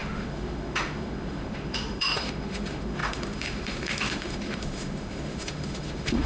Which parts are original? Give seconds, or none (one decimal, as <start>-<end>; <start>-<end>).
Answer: none